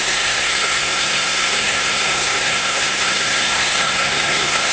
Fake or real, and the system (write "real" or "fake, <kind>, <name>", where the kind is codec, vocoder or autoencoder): fake, codec, SNAC